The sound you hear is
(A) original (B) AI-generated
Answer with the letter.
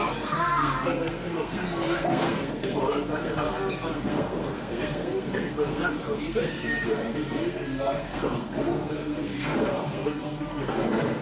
B